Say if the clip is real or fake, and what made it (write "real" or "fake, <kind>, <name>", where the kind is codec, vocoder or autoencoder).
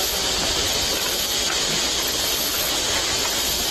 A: real